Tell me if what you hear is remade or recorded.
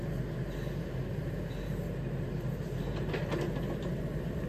recorded